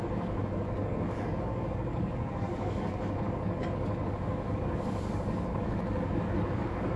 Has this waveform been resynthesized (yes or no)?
yes